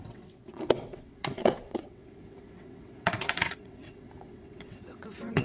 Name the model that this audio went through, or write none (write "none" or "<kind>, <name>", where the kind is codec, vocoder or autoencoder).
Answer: vocoder, WaveNeXt